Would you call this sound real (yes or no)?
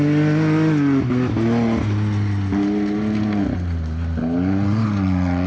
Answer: yes